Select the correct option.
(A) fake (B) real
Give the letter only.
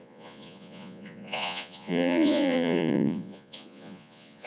A